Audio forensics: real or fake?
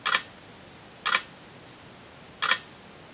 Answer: real